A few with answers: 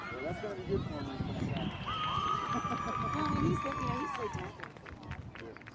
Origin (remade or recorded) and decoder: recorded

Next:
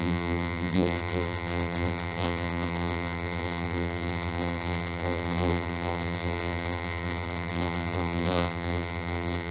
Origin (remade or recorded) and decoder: remade, vocoder, BigVGAN v2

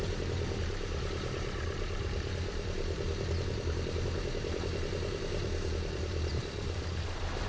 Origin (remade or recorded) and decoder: remade, vocoder, BigVGAN v2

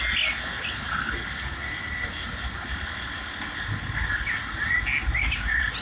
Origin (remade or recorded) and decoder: recorded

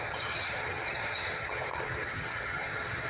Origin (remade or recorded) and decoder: remade, vocoder, HiFi-GAN